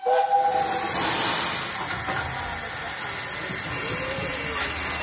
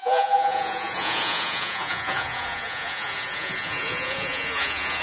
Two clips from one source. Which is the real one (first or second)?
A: first